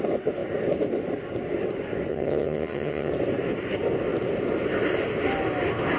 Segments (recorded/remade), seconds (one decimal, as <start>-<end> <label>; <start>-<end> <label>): 0.0-2.1 recorded; 2.1-3.1 remade; 3.1-6.0 recorded